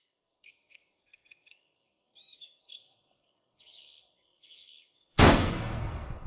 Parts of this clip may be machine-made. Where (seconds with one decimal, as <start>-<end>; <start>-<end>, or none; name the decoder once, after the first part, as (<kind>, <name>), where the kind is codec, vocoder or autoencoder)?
0.0-6.3 (codec, SNAC)